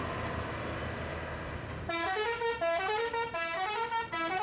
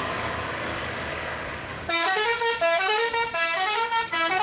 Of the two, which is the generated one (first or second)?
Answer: second